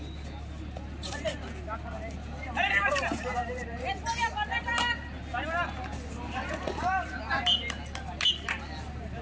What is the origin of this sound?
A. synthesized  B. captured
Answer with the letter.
B